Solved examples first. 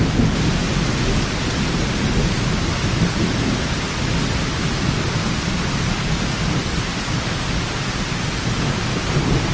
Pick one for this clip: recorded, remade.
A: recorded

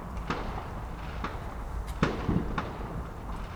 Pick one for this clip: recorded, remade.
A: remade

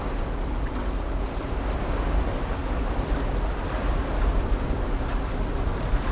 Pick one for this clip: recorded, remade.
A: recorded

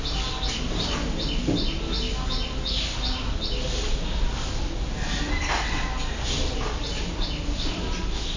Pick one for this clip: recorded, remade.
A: recorded